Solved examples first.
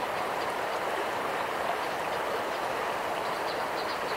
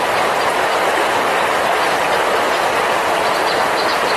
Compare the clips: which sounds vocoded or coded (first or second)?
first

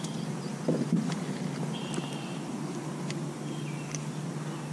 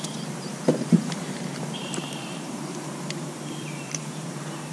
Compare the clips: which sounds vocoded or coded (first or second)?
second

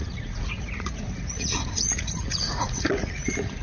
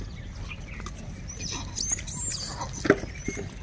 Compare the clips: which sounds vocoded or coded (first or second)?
first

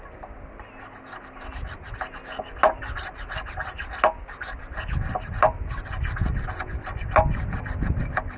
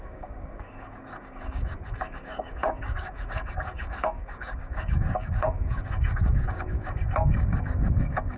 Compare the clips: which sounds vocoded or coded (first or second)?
second